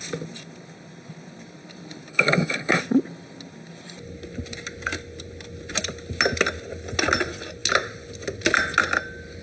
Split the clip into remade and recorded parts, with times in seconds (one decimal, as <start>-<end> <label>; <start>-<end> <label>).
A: 0.0-2.1 recorded; 2.1-2.8 remade; 2.8-9.4 recorded